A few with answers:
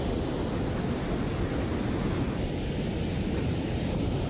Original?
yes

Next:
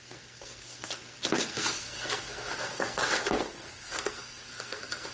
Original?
no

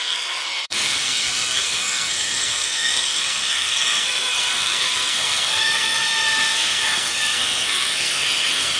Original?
no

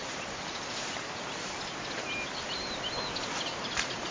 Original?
yes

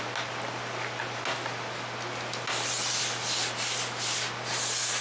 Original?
yes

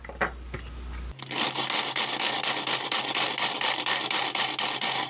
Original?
yes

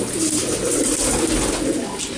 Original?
yes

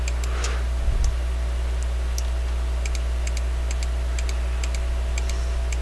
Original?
yes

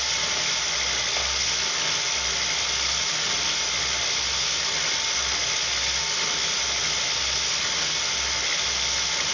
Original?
yes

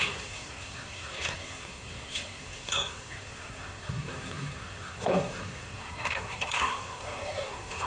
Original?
no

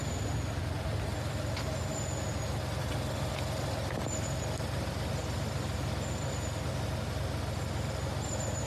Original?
yes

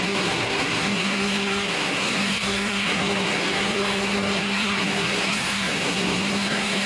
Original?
no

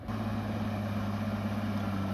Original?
yes